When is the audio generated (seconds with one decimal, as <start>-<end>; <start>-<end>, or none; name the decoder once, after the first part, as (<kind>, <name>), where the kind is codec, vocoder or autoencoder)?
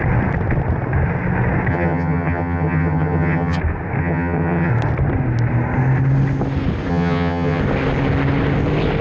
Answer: 1.7-3.6 (vocoder, HiFi-GAN); 4.0-4.7; 6.9-7.6